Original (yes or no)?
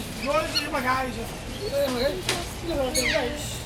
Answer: yes